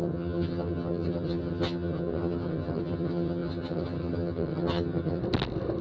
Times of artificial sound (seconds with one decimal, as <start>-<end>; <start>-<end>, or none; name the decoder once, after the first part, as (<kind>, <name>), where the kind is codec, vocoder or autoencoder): 0.0-5.2 (vocoder, HiFi-GAN)